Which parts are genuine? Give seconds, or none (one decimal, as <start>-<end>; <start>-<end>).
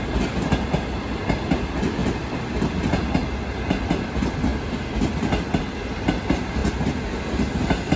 0.0-8.0